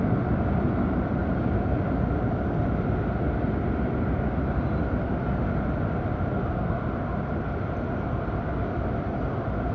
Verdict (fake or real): real